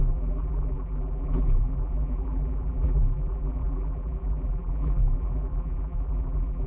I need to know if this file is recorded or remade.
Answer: remade